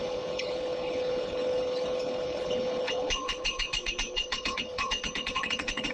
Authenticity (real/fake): fake